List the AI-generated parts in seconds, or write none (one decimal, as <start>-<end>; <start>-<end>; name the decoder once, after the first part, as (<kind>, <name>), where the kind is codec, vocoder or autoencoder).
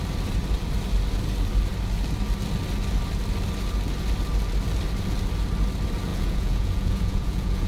6.1-7.7 (vocoder, Vocos)